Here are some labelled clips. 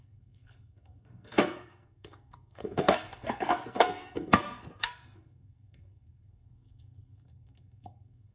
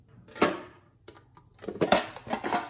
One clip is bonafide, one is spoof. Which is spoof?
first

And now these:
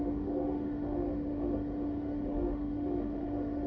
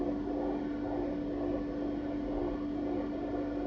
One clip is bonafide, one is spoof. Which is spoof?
first